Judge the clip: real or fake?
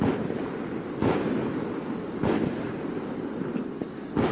real